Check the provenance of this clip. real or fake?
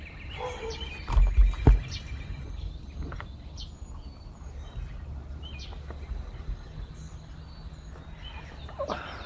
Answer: real